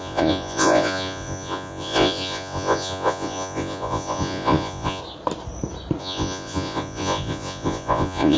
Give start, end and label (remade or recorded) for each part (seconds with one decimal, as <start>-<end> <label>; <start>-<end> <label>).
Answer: 0.0-5.0 remade; 5.0-6.0 recorded; 6.0-8.4 remade